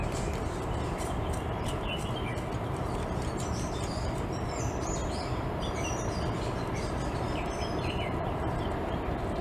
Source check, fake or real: fake